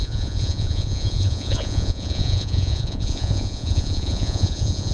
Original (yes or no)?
no